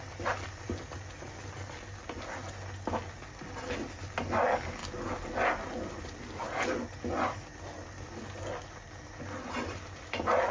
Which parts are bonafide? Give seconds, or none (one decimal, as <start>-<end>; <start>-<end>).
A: 0.0-10.5